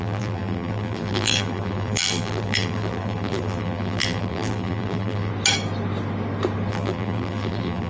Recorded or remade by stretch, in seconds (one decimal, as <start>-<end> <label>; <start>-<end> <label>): 0.0-5.3 remade; 5.3-6.7 recorded; 6.7-7.9 remade